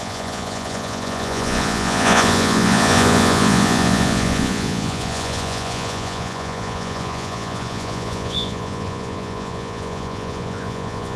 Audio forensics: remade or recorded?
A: remade